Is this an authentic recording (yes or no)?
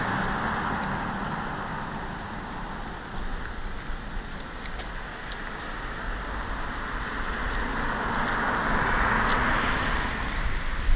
yes